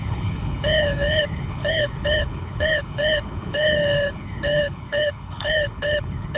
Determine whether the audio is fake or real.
fake